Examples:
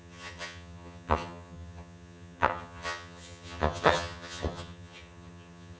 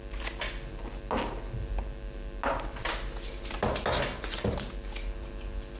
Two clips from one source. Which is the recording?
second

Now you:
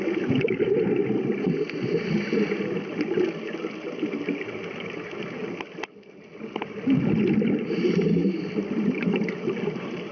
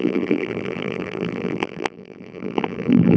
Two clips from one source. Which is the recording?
first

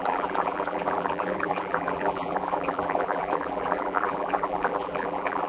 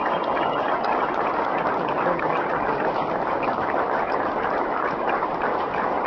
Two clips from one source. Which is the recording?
second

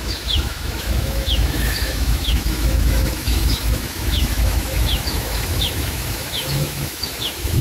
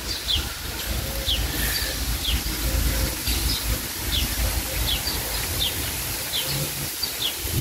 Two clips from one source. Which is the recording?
second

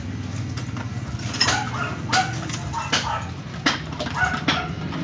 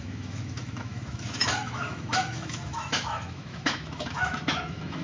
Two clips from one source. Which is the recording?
first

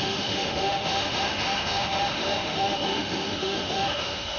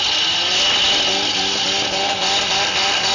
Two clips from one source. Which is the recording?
second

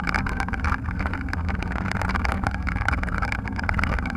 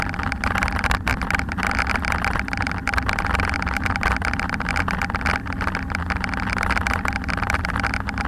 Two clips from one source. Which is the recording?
second